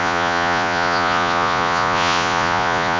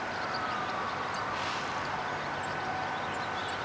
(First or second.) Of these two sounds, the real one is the second